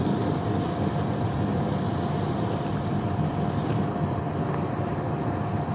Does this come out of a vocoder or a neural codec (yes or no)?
no